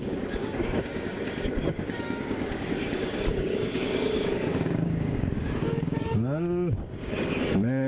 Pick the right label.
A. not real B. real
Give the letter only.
A